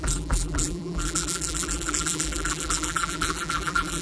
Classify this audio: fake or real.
fake